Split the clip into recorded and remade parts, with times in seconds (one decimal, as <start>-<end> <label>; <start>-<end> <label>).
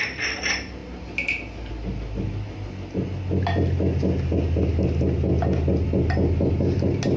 0.0-7.2 recorded